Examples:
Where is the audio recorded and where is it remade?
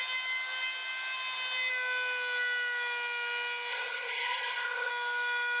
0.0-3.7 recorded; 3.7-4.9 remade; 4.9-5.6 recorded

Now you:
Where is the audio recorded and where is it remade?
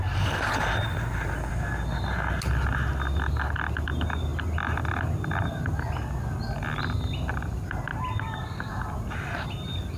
0.0-10.0 recorded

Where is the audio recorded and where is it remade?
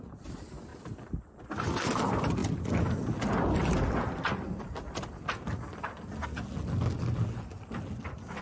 0.0-8.4 recorded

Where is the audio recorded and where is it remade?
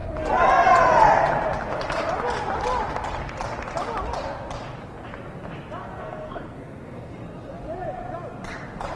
0.0-5.8 recorded; 5.8-7.1 remade; 7.1-9.0 recorded